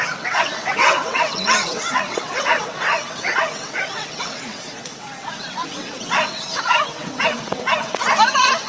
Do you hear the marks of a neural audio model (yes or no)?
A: yes